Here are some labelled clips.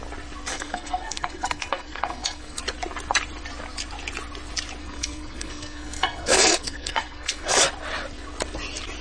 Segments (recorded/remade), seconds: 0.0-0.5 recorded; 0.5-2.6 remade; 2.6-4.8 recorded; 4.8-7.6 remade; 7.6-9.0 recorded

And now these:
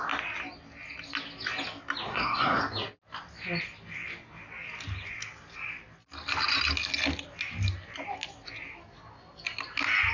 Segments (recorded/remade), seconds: 0.0-2.1 recorded; 2.1-2.6 remade; 2.6-10.1 recorded

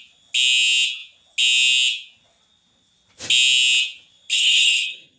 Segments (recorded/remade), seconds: 0.0-4.3 recorded; 4.3-5.2 remade

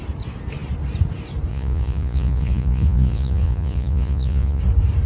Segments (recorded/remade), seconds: 0.0-1.5 recorded; 1.5-4.6 remade; 4.6-5.1 recorded

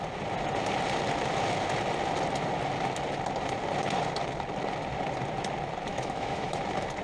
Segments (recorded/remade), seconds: 0.0-5.9 recorded; 5.9-6.6 remade; 6.6-7.0 recorded